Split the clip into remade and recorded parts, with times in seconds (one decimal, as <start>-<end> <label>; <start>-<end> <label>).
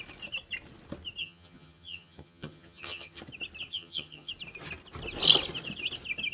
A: 0.0-1.2 recorded; 1.2-3.2 remade; 3.2-3.7 recorded; 3.7-4.3 remade; 4.3-6.3 recorded